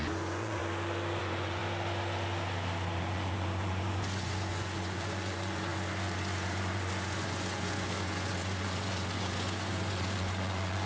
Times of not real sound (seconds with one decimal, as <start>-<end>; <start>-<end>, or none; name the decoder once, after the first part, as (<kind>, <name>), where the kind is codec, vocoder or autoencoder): 0.0-0.6 (vocoder, Vocos); 1.2-1.6; 3.0-10.9